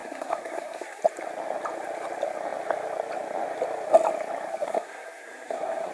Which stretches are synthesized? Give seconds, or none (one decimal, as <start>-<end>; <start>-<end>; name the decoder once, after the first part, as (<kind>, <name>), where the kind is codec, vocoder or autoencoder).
0.0-1.0 (codec, SNAC); 4.5-5.9